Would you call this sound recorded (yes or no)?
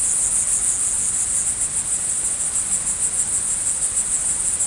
yes